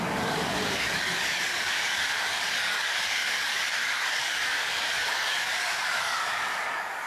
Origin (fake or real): fake